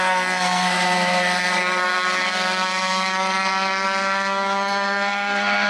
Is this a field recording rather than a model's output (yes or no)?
no